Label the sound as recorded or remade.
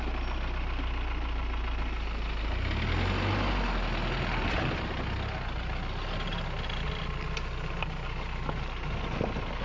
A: recorded